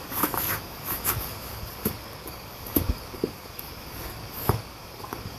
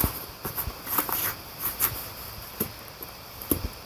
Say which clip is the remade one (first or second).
first